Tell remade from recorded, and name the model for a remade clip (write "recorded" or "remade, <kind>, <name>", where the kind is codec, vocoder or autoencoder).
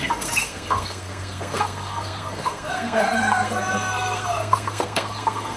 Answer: remade, codec, SNAC